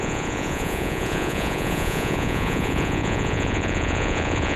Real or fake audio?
fake